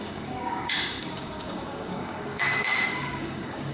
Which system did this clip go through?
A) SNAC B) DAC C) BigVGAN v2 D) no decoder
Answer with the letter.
B